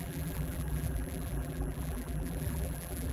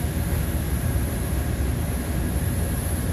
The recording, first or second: second